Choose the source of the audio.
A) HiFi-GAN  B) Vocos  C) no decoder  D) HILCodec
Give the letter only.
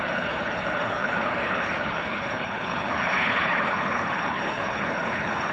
D